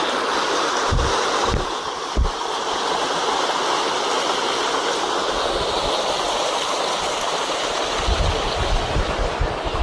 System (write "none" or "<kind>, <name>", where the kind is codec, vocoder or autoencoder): none